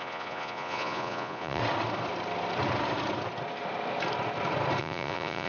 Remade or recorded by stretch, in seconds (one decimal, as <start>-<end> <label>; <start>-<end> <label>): 0.0-1.6 remade; 1.6-4.8 recorded; 4.8-5.5 remade